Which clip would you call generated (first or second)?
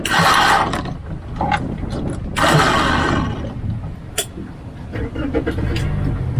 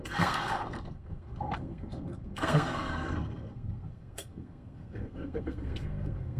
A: second